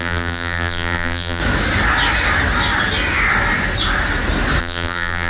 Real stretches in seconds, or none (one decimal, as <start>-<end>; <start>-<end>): 1.4-4.6